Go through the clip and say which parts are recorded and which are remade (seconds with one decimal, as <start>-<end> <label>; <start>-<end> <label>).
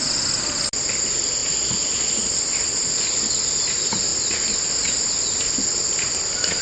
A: 0.0-1.4 recorded; 1.4-2.9 remade; 2.9-6.6 recorded